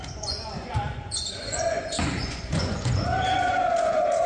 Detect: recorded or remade remade